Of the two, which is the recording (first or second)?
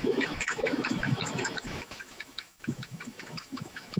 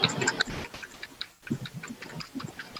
second